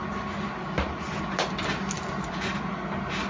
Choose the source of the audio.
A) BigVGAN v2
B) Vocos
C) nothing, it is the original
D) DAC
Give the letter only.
C